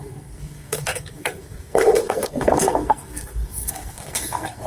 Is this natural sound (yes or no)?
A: no